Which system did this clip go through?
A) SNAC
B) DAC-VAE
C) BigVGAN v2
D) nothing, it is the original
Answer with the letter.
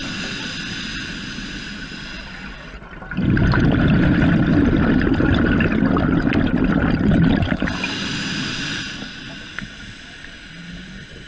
D